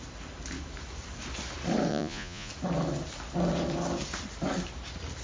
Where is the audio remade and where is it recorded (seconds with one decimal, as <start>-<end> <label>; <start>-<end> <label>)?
0.0-1.9 recorded; 1.9-2.5 remade; 2.5-5.2 recorded